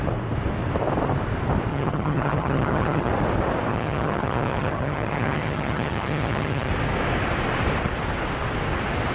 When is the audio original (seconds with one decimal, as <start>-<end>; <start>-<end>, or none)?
0.0-1.7; 3.1-3.7; 6.7-9.1